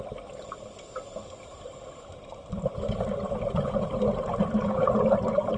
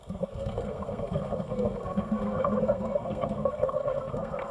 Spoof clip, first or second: second